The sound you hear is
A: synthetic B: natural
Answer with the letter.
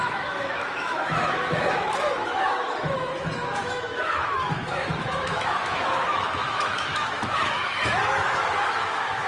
A